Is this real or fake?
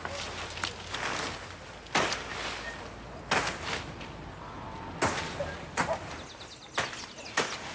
real